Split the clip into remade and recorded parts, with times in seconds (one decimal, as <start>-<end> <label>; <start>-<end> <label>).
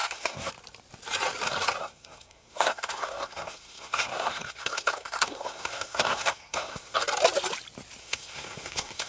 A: 0.0-0.5 remade; 0.5-1.8 recorded; 1.8-7.0 remade; 7.0-8.0 recorded; 8.0-9.1 remade